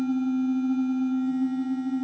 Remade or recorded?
remade